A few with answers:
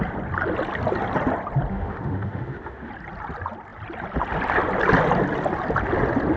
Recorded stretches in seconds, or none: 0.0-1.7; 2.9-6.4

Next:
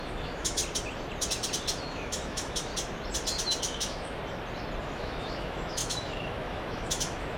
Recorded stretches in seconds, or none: 0.6-1.8; 2.7-3.6; 4.2-4.8

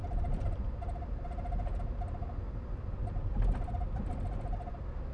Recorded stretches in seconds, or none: 0.0-5.1

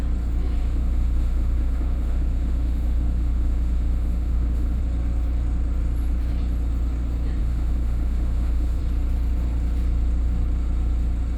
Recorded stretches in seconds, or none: 0.0-0.6; 4.8-7.4; 8.8-11.4

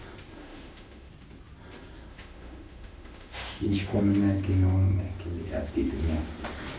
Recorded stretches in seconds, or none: 0.0-0.4; 1.1-2.1; 4.0-6.8